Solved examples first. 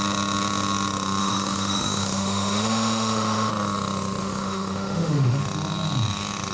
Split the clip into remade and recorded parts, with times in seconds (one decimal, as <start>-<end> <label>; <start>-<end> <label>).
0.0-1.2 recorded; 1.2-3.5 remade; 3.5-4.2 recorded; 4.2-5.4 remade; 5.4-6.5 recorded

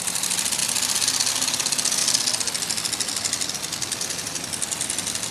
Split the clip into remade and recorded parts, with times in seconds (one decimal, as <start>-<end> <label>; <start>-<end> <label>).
0.0-5.3 recorded

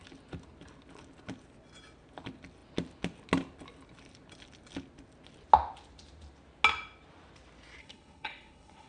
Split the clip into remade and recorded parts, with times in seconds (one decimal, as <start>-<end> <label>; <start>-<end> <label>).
0.0-7.8 recorded; 7.8-8.9 remade

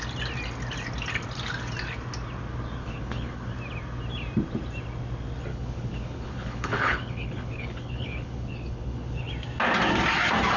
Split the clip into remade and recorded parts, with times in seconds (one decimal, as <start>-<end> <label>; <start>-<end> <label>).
0.0-2.8 recorded; 2.8-3.5 remade; 3.5-5.5 recorded; 5.5-9.3 remade; 9.3-10.6 recorded

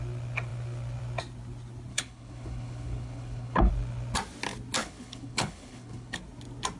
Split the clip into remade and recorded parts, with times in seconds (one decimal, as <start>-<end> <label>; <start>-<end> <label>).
0.0-1.9 recorded; 1.9-3.7 remade; 3.7-4.8 recorded; 4.8-6.2 remade; 6.2-6.8 recorded

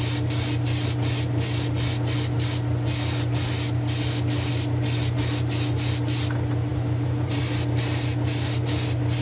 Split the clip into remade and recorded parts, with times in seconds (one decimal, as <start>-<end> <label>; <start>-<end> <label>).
0.0-6.7 recorded; 6.7-7.4 remade; 7.4-9.2 recorded

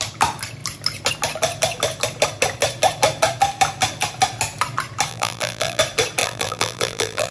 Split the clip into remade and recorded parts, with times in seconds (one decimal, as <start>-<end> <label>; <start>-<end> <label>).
0.0-5.1 recorded; 5.1-5.8 remade; 5.8-6.2 recorded; 6.2-7.3 remade